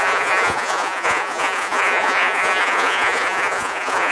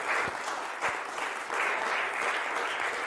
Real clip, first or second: second